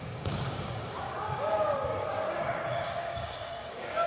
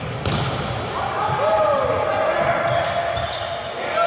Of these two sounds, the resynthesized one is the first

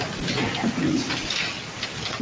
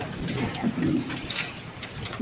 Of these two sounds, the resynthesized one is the second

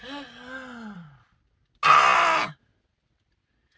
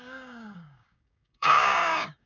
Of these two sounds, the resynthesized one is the second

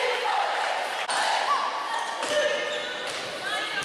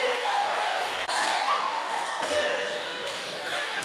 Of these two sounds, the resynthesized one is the second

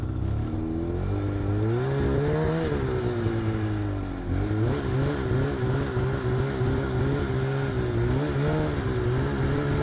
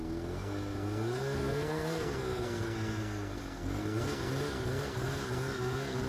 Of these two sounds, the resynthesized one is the second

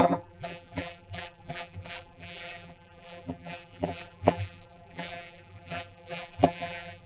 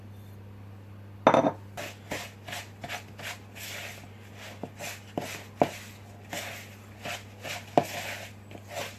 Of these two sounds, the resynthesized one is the first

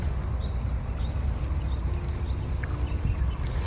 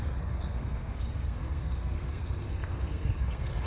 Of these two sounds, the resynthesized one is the second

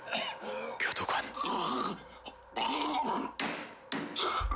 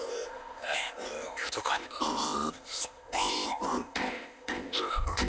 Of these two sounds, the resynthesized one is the second